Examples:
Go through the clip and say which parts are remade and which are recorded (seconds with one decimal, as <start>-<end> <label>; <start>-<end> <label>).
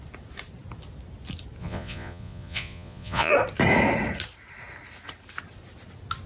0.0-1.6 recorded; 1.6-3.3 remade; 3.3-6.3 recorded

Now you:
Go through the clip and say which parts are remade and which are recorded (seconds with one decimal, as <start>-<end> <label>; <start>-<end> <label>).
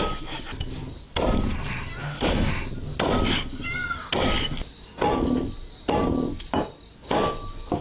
0.0-2.0 recorded; 2.0-2.5 remade; 2.5-7.8 recorded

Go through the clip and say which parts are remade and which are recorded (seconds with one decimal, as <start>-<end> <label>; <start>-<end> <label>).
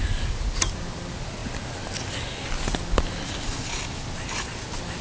0.0-5.0 recorded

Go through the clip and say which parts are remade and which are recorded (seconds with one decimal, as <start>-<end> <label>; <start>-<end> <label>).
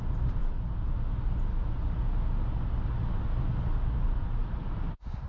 0.0-5.3 recorded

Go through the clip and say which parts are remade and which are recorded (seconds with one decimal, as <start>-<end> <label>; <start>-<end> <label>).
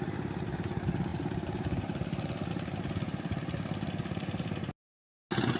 0.0-5.6 recorded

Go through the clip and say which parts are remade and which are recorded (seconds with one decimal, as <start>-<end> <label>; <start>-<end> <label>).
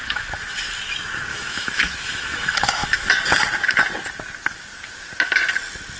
0.0-0.6 remade; 0.6-1.3 recorded; 1.3-3.1 remade; 3.1-6.0 recorded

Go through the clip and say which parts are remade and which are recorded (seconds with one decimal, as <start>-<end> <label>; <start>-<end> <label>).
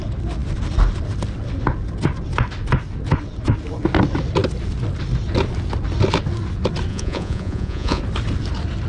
0.0-6.9 recorded; 6.9-8.0 remade; 8.0-8.9 recorded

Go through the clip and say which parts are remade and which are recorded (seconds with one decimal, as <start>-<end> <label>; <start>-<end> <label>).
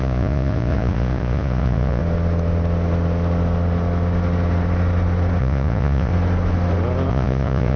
0.0-2.0 remade; 2.0-5.4 recorded; 5.4-6.1 remade; 6.1-7.1 recorded; 7.1-7.8 remade